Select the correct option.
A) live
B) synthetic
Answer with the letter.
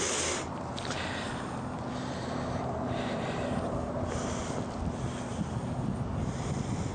A